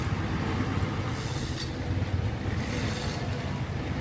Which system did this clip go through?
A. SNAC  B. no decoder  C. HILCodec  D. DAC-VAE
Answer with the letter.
B